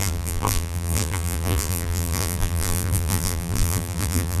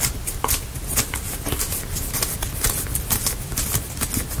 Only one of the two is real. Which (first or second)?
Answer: second